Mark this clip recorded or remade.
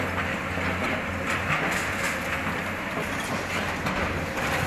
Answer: recorded